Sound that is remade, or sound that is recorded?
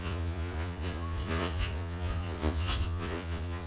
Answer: remade